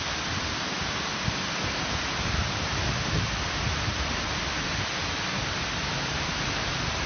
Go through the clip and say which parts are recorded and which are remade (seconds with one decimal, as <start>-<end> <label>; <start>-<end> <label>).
0.0-7.1 recorded